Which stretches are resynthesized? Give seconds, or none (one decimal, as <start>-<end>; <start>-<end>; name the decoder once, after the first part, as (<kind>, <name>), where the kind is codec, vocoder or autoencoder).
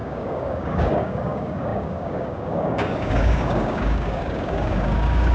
0.0-5.3 (codec, DAC)